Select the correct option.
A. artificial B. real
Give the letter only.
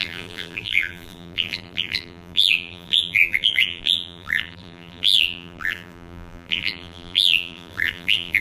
A